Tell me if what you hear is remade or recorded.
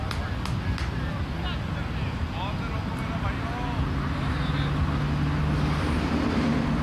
recorded